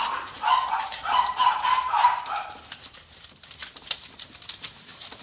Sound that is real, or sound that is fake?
fake